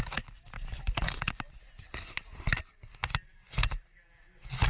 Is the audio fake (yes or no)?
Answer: no